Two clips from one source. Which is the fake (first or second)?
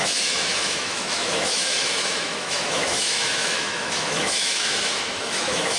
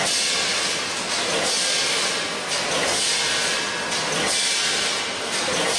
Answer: first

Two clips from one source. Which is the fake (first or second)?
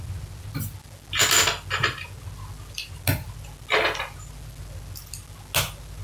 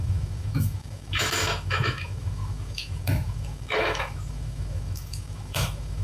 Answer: second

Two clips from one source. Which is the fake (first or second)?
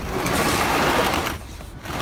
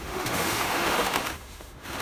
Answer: second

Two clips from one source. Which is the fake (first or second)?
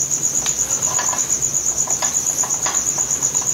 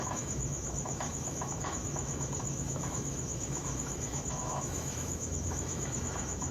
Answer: second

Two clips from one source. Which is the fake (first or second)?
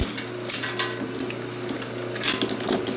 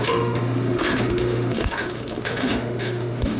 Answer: second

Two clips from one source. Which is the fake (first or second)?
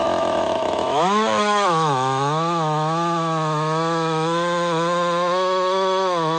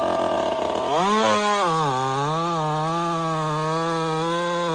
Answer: first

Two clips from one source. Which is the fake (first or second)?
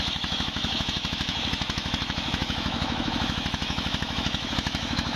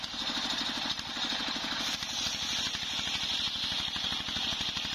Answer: first